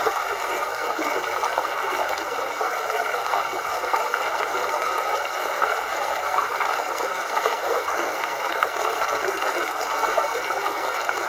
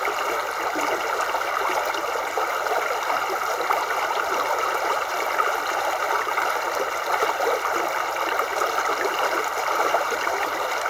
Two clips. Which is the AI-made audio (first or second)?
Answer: first